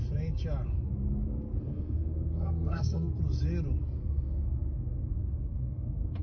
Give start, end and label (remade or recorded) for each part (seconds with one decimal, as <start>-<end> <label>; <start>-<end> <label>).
0.0-1.7 recorded; 1.7-3.2 remade; 3.2-4.0 recorded; 4.0-6.2 remade